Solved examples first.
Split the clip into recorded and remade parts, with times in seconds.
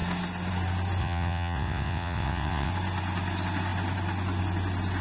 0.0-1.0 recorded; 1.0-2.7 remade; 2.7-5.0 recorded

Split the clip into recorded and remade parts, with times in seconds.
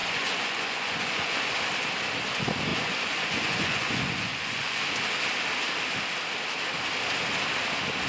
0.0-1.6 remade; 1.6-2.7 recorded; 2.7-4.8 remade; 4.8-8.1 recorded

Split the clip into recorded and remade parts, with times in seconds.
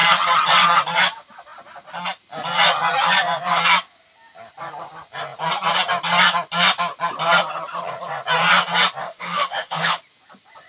0.0-9.0 recorded; 9.0-10.0 remade; 10.0-10.7 recorded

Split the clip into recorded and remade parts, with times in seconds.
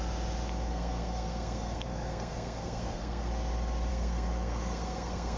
0.0-0.7 recorded; 0.7-3.3 remade; 3.3-3.9 recorded; 3.9-5.4 remade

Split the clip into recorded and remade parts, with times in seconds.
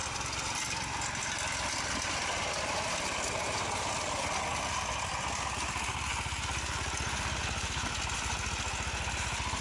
0.0-9.6 recorded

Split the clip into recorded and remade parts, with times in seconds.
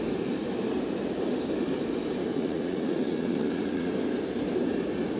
0.0-2.3 recorded; 2.3-3.9 remade; 3.9-5.2 recorded